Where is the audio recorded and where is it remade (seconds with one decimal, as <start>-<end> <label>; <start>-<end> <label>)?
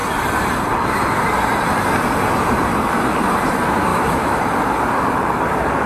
0.0-3.9 recorded; 3.9-4.4 remade; 4.4-5.9 recorded